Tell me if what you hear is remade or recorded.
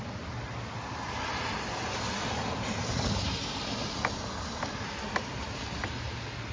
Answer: recorded